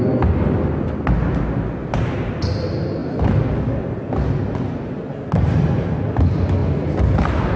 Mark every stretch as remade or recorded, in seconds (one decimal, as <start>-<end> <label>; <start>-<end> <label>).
0.0-7.6 recorded